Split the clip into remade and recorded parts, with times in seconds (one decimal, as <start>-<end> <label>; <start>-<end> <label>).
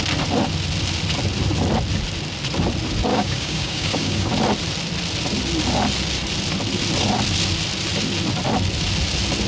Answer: 0.0-3.1 recorded; 3.1-4.3 remade; 4.3-9.5 recorded